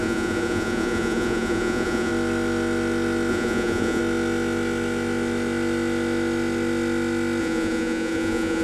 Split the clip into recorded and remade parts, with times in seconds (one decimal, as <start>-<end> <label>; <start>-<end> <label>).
0.0-2.1 remade; 2.1-3.3 recorded; 3.3-4.0 remade; 4.0-7.4 recorded; 7.4-8.6 remade